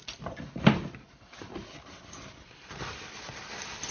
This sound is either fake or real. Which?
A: real